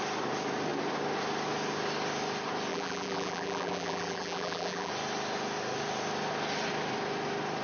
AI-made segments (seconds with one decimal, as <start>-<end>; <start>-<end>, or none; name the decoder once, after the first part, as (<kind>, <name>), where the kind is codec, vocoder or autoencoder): 2.7-4.9 (vocoder, BigVGAN v2)